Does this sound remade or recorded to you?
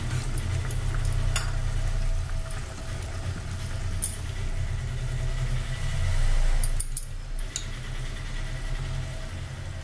recorded